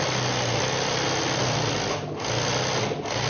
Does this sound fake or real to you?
real